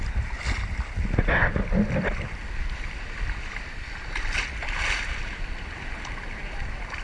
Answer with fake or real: real